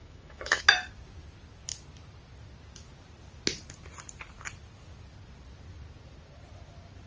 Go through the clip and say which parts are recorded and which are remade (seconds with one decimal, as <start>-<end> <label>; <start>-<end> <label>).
0.0-0.6 remade; 0.6-7.1 recorded